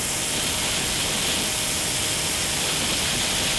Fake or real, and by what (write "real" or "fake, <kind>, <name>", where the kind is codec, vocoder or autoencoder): real